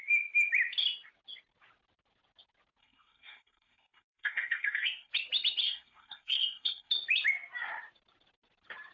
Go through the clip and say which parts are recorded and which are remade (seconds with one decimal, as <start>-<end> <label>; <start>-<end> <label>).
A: 0.0-2.8 recorded; 2.8-5.1 remade; 5.1-5.6 recorded; 5.6-6.9 remade; 6.9-8.9 recorded